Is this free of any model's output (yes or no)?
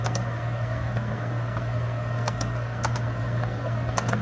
no